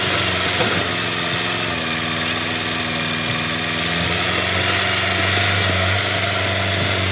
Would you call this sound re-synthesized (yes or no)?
no